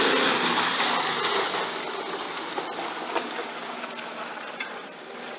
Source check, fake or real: real